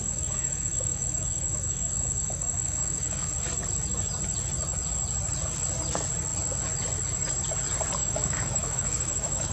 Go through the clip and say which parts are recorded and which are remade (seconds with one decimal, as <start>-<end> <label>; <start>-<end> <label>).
0.0-3.3 remade; 3.3-8.0 recorded; 8.0-9.5 remade